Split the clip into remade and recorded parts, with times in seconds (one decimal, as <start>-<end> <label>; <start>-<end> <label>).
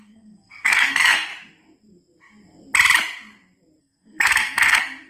0.0-1.3 remade; 1.3-3.8 recorded; 3.8-5.1 remade